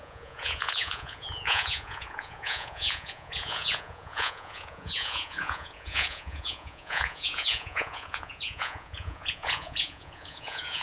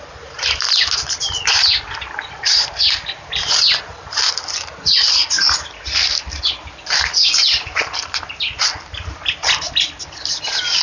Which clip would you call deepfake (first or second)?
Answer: first